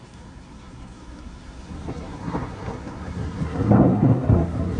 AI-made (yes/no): yes